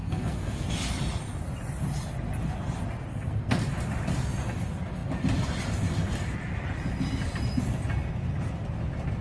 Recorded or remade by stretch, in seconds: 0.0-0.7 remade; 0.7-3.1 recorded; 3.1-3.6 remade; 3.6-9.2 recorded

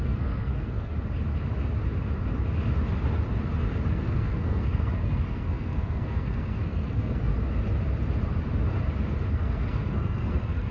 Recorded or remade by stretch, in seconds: 0.0-0.9 remade; 0.9-3.9 recorded; 3.9-7.3 remade; 7.3-9.3 recorded; 9.3-10.7 remade